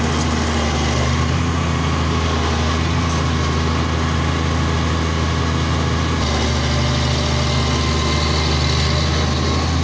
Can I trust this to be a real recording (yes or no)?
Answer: yes